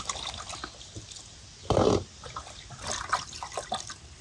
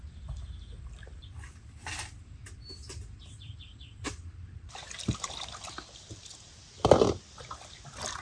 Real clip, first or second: first